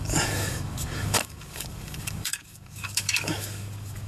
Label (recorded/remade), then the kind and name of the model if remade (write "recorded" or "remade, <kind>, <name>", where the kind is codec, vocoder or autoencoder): remade, codec, DAC